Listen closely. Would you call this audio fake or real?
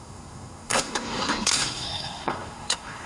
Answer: fake